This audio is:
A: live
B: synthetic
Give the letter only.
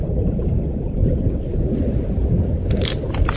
A